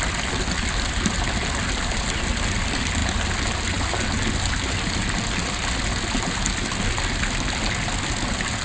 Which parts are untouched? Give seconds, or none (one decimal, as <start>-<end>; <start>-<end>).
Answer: 0.0-8.6